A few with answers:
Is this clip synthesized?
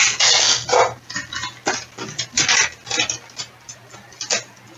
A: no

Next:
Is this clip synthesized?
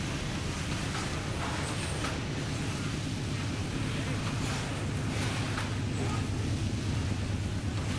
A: no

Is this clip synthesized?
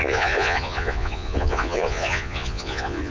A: yes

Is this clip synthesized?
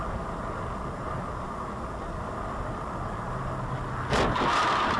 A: no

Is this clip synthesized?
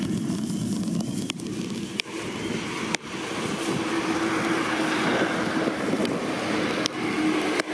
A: no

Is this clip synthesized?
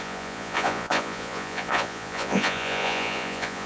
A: yes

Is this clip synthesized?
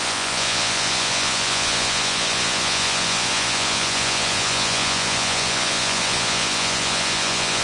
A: yes